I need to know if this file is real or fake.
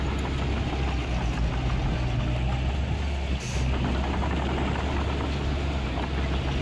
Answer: real